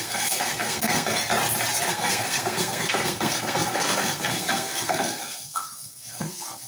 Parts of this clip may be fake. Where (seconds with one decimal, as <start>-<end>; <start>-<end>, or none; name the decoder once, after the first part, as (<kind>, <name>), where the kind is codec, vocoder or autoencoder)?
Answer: 0.0-1.3 (codec, SNAC); 1.9-6.7

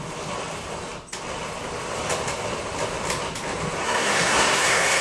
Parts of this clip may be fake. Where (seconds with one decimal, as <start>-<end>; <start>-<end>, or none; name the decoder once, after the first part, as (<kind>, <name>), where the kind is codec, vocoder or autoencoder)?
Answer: 3.8-5.0 (codec, SNAC)

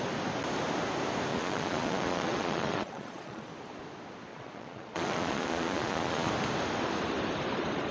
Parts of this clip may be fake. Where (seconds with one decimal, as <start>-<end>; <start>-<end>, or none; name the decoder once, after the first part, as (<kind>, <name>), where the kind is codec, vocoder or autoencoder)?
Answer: 1.3-3.5 (vocoder, Vocos); 4.3-6.3

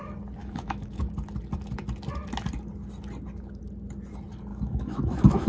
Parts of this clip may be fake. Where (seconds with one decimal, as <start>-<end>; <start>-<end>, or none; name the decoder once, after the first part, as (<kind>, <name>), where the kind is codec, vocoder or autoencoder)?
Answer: 0.4-1.0 (autoencoder, DAC-VAE); 4.5-5.5